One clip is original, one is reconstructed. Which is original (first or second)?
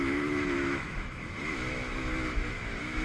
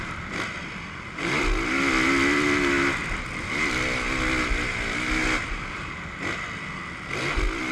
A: second